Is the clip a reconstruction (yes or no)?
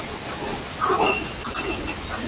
no